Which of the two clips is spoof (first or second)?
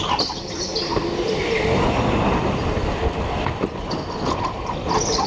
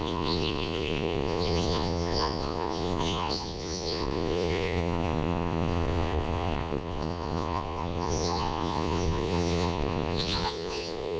second